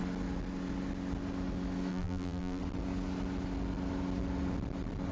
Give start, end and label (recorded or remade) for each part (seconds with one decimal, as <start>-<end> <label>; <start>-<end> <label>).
0.0-1.9 recorded; 1.9-2.6 remade; 2.6-5.1 recorded